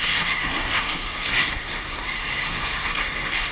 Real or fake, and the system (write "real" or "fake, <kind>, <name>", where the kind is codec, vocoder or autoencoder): fake, codec, SNAC